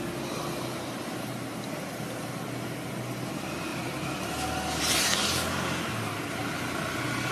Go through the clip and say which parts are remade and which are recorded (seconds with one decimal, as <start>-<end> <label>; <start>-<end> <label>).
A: 0.0-7.3 recorded